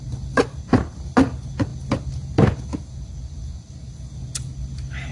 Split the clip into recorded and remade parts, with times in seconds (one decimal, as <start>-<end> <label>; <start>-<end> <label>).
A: 0.0-5.1 recorded